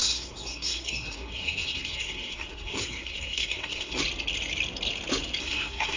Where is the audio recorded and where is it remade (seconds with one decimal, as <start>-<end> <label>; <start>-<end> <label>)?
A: 0.0-4.0 remade; 4.0-5.4 recorded; 5.4-6.0 remade